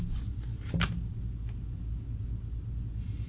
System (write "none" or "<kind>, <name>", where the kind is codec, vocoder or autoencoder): none